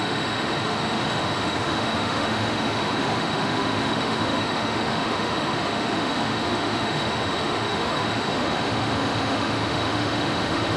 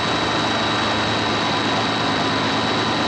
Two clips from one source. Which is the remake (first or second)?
first